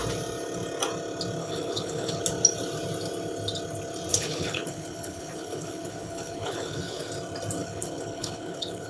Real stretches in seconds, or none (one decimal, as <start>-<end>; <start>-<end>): 0.0-1.4; 2.2-4.1; 7.1-7.6